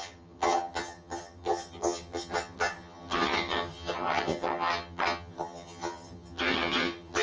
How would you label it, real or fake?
fake